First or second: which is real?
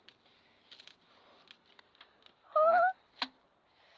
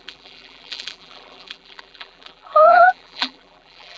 first